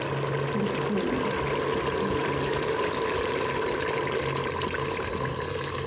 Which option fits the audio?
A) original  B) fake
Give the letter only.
A